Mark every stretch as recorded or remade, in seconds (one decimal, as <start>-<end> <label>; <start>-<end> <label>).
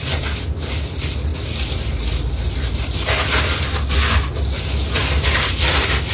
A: 0.0-6.1 recorded